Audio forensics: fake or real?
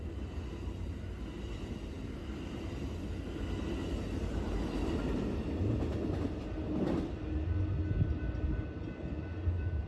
real